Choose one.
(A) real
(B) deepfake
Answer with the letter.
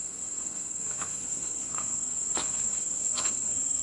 B